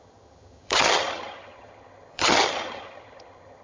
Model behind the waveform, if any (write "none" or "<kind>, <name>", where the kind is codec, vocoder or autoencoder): vocoder, HiFi-GAN